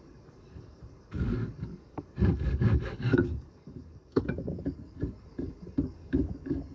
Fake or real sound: fake